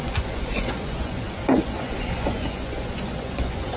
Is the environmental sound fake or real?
fake